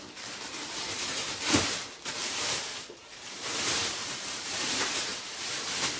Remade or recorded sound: remade